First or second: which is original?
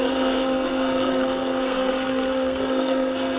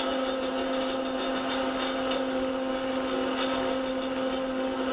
second